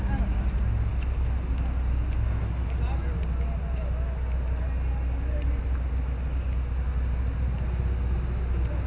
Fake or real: real